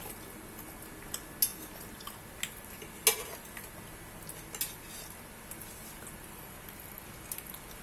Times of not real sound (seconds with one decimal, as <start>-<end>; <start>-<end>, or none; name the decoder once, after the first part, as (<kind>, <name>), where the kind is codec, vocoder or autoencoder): none